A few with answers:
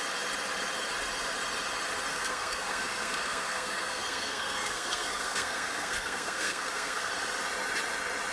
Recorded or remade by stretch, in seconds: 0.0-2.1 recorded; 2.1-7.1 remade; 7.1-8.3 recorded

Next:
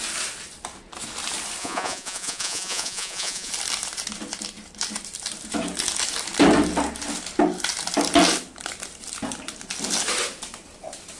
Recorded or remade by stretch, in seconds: 0.0-1.6 recorded; 1.6-3.5 remade; 3.5-11.2 recorded

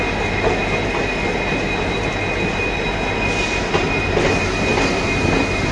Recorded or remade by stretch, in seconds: 0.0-5.7 recorded

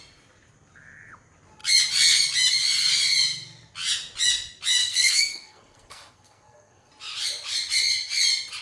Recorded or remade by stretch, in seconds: 0.0-4.8 recorded; 4.8-6.9 remade; 6.9-8.6 recorded